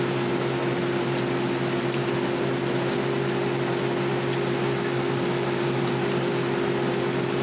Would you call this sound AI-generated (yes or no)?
no